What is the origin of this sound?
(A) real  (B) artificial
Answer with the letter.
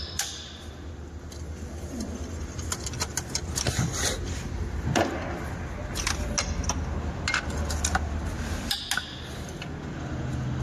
A